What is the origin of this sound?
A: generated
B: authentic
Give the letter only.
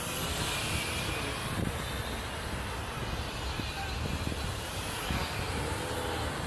B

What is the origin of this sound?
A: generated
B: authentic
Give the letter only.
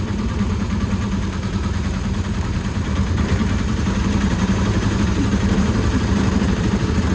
A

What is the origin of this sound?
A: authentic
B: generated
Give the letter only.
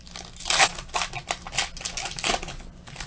A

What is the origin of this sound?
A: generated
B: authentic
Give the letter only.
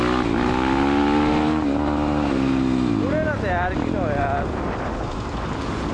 B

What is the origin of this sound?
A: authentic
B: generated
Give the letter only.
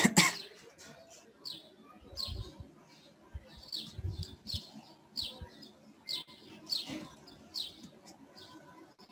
A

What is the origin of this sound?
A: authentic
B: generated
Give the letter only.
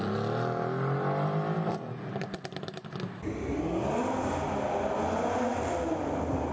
A